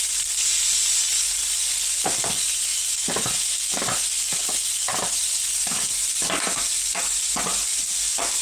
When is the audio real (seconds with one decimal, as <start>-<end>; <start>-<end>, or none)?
0.0-8.4